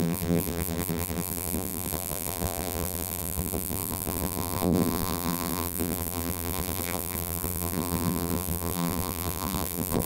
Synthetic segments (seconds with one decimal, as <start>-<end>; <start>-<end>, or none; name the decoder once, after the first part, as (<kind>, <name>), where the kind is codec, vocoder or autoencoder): 0.0-10.0 (vocoder, BigVGAN v2)